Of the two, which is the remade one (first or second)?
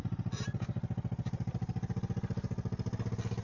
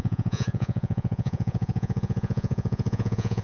second